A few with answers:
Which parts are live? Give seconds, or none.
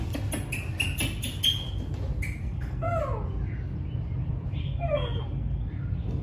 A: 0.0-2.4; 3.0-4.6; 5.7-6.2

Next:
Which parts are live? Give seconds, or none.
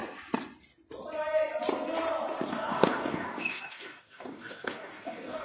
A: 0.0-2.5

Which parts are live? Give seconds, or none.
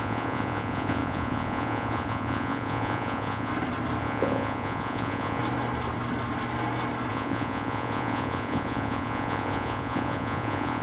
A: 3.5-4.0; 5.4-7.1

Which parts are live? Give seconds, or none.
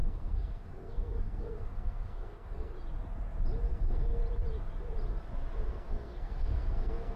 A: 2.7-3.7; 4.2-5.7